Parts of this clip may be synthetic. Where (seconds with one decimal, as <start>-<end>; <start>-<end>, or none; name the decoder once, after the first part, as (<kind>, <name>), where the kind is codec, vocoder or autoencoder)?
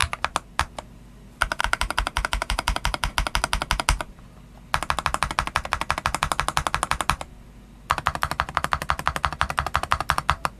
1.6-3.1 (vocoder, BigVGAN v2)